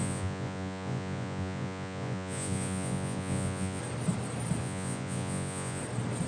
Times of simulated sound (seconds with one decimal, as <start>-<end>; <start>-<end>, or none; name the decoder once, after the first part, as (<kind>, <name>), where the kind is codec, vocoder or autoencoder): 0.0-3.8 (vocoder, Vocos); 4.6-5.8